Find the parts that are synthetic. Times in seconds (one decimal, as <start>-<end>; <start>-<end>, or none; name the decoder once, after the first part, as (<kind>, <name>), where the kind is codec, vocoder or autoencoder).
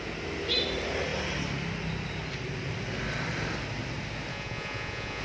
4.3-5.2 (vocoder, Vocos)